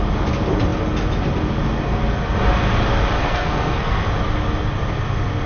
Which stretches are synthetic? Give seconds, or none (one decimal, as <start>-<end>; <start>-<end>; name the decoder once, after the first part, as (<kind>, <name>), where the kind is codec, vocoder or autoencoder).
3.2-4.1 (codec, SNAC)